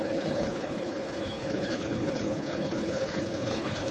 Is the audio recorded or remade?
remade